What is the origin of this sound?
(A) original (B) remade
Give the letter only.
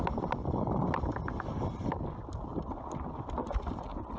A